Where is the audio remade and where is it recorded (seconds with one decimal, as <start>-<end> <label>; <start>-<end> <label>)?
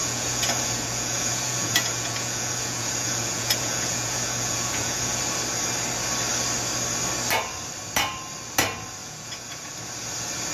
0.0-5.2 remade; 5.2-9.0 recorded; 9.0-9.7 remade; 9.7-10.5 recorded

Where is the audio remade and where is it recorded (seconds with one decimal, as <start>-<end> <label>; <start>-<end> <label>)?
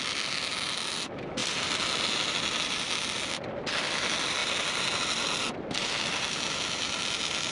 0.0-7.5 recorded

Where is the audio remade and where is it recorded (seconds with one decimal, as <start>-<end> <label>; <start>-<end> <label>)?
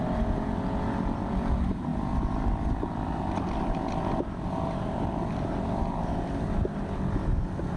0.0-7.8 recorded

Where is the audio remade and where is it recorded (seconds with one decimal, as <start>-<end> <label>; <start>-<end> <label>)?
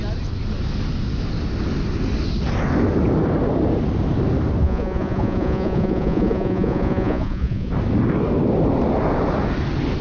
0.0-4.6 recorded; 4.6-7.7 remade; 7.7-10.0 recorded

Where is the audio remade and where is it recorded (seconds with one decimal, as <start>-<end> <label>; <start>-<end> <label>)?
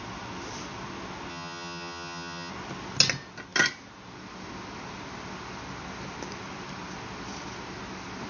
0.0-1.3 recorded; 1.3-2.5 remade; 2.5-8.3 recorded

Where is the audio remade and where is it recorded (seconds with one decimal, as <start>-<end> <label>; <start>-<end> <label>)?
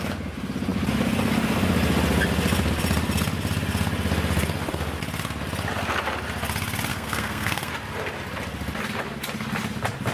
0.0-6.9 recorded; 6.9-7.7 remade; 7.7-10.1 recorded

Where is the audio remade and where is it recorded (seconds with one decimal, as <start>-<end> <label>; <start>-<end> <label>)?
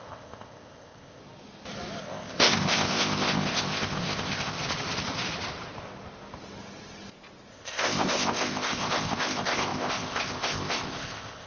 0.0-1.2 remade; 1.2-2.0 recorded; 2.0-4.6 remade; 4.6-7.5 recorded; 7.5-11.5 remade